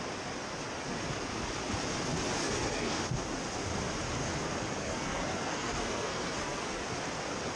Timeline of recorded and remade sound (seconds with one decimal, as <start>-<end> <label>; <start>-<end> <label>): 0.0-2.4 recorded; 2.4-3.0 remade; 3.0-4.8 recorded; 4.8-6.8 remade; 6.8-7.6 recorded